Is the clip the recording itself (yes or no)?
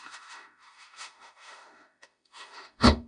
no